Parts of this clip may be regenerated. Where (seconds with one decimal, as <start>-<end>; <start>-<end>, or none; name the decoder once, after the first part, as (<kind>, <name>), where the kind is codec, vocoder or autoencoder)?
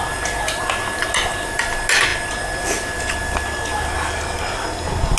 none